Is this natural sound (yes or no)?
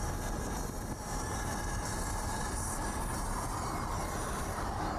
no